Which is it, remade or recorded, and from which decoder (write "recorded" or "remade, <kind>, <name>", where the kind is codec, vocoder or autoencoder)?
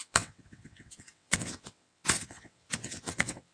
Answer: remade, vocoder, WaveNeXt